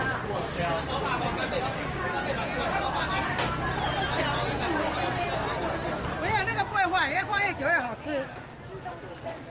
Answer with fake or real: real